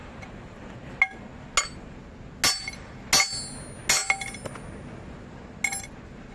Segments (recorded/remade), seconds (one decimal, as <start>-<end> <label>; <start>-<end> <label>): 0.0-6.3 recorded